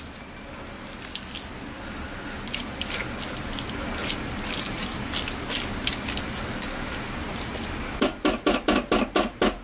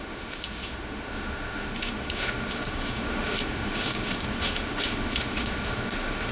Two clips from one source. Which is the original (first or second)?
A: first